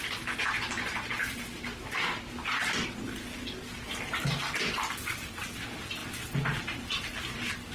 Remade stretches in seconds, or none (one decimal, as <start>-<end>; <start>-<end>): none